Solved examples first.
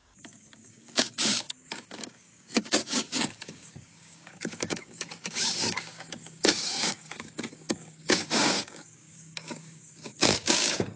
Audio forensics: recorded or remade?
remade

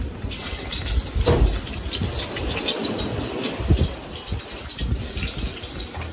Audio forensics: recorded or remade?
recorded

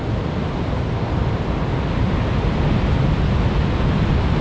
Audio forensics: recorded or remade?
recorded